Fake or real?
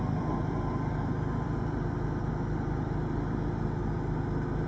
real